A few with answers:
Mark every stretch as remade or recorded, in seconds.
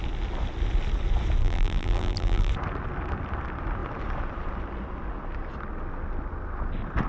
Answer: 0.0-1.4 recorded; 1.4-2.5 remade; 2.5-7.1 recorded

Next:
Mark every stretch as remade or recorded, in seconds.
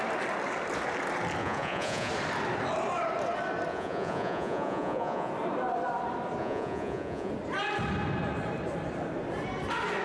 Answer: 0.0-1.4 recorded; 1.4-2.1 remade; 2.1-3.7 recorded; 3.7-5.3 remade; 5.3-6.4 recorded; 6.4-7.3 remade; 7.3-10.0 recorded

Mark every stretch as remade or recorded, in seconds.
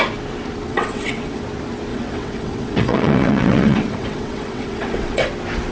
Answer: 0.0-0.7 recorded; 0.7-1.4 remade; 1.4-1.9 recorded; 1.9-5.3 remade; 5.3-5.7 recorded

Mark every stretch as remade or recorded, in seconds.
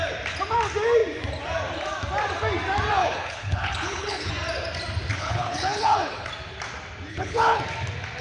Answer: 0.0-3.0 recorded; 3.0-4.3 remade; 4.3-5.1 recorded; 5.1-6.3 remade; 6.3-7.1 recorded; 7.1-7.6 remade; 7.6-8.2 recorded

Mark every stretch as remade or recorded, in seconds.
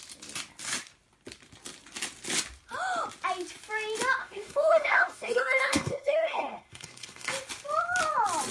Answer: 0.0-4.2 recorded; 4.2-7.3 remade; 7.3-8.5 recorded